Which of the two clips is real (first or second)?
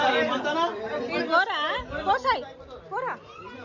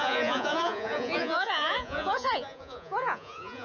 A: first